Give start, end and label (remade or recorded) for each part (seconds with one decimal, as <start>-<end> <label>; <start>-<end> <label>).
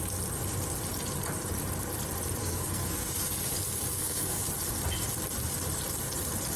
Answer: 0.0-2.4 recorded; 2.4-3.3 remade; 3.3-3.9 recorded; 3.9-4.4 remade; 4.4-6.6 recorded